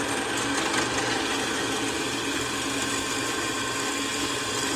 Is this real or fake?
real